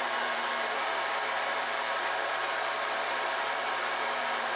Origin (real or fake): fake